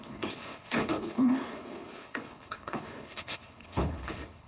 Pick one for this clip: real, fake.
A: fake